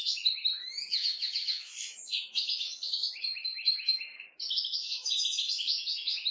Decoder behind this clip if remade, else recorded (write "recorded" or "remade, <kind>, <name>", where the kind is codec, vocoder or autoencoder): remade, autoencoder, DAC-VAE